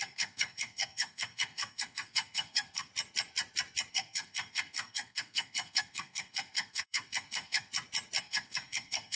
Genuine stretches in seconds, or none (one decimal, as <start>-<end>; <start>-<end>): 2.9-3.9; 7.7-8.2